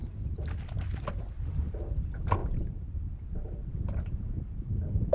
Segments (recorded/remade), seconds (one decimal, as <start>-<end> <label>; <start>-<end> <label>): 0.0-2.4 recorded; 2.4-5.1 remade